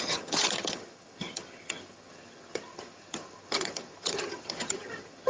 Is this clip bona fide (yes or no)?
no